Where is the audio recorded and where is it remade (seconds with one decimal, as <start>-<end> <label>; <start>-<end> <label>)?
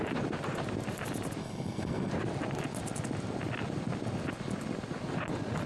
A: 0.0-1.4 recorded; 1.4-2.1 remade; 2.1-5.7 recorded